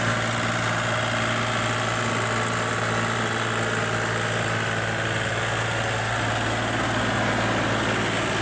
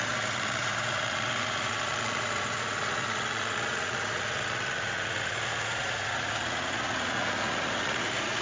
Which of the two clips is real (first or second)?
first